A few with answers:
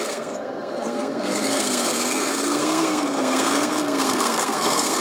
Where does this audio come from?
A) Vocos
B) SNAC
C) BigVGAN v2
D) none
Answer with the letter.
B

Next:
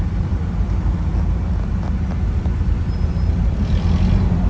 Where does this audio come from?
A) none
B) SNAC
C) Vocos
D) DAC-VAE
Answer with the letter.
A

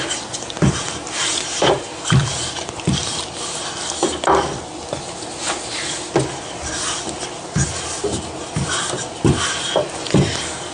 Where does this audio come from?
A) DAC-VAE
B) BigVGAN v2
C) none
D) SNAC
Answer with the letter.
C